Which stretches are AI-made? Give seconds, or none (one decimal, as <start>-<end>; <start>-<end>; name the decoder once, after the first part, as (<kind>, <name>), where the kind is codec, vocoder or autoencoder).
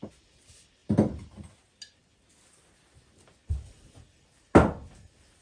none